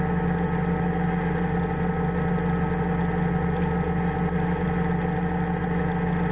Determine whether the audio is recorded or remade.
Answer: recorded